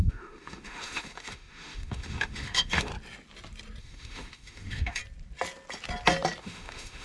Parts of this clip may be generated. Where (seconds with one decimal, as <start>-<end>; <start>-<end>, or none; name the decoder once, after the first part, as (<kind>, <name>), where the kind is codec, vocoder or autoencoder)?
0.0-2.9 (autoencoder, DAC-VAE); 3.8-5.0; 6.4-7.0